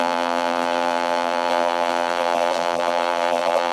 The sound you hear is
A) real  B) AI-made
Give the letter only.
B